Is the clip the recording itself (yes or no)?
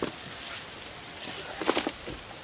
yes